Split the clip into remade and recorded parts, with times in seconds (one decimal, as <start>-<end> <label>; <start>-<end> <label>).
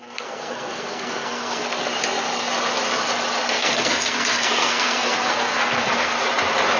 0.0-1.9 remade; 1.9-3.5 recorded; 3.5-6.1 remade; 6.1-6.8 recorded